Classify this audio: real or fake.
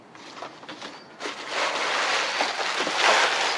real